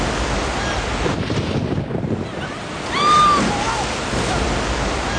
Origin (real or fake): real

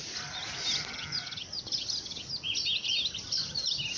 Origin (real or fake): real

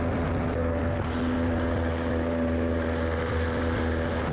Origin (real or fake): real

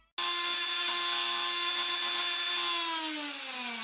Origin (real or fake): real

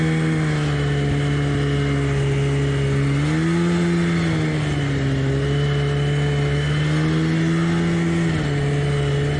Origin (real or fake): real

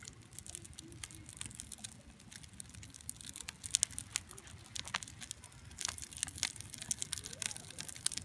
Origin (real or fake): real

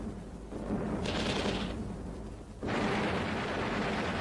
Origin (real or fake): real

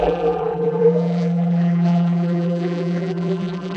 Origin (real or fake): fake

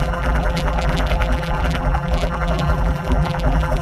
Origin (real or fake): fake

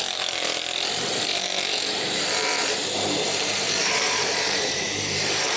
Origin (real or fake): fake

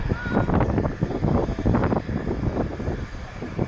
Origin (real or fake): fake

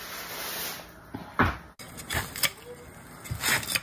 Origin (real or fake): real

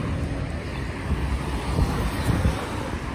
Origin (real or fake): real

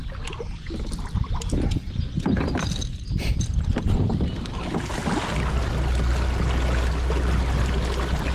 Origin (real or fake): real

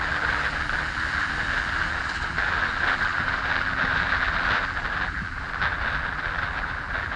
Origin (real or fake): fake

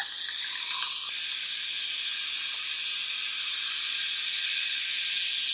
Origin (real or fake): real